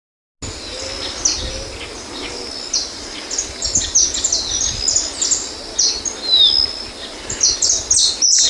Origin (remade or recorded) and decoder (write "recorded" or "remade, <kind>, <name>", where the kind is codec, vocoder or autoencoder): recorded